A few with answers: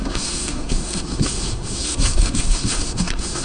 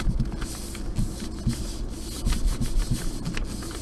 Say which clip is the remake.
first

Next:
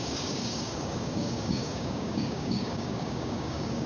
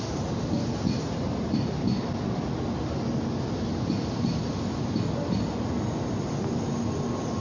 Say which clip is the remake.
first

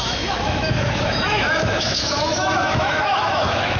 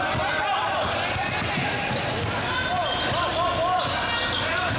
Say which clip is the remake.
first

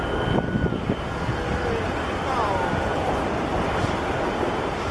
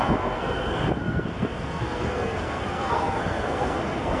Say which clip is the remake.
second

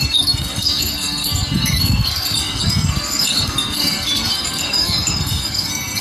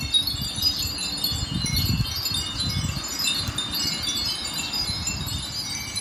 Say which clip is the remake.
first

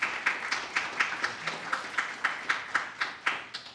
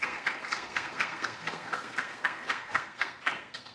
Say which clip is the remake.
second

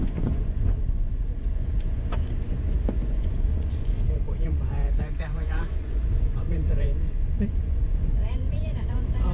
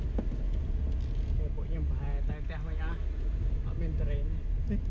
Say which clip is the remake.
first